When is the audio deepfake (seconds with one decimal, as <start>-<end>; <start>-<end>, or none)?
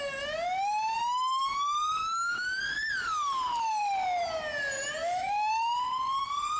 2.0-2.6; 5.0-5.5